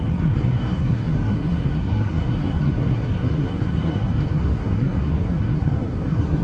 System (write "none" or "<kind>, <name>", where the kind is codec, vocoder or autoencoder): codec, SNAC